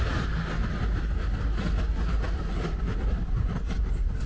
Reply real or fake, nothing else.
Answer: real